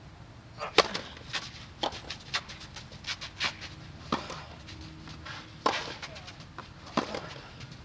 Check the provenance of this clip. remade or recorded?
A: recorded